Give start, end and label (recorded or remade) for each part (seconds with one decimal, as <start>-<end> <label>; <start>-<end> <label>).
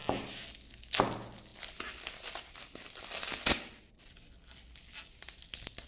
0.0-5.9 recorded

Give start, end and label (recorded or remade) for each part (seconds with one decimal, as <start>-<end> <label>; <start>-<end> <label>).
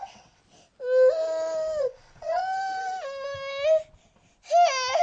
0.0-0.4 remade; 0.4-1.8 recorded; 1.8-2.4 remade; 2.4-5.0 recorded